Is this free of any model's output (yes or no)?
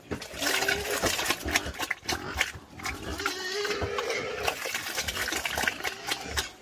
yes